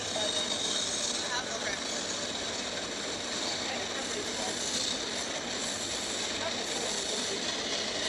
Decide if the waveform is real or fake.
real